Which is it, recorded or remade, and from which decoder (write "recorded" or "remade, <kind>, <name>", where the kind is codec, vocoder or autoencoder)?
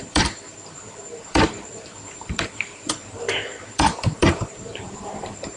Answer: remade, vocoder, BigVGAN v2